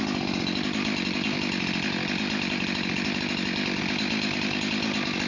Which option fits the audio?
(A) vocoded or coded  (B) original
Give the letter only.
B